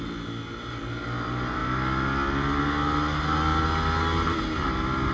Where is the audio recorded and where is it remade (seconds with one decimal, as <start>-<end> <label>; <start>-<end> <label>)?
0.0-5.1 recorded